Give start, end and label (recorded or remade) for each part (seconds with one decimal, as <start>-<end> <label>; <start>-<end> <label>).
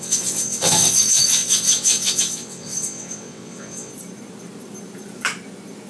0.0-3.9 remade; 3.9-5.9 recorded